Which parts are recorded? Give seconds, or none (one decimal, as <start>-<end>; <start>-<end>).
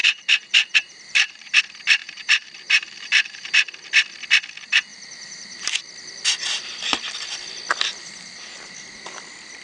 1.6-2.0; 3.7-4.9; 5.7-9.6